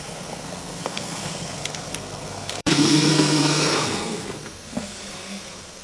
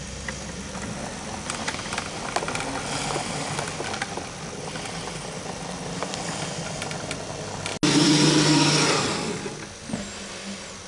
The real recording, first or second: second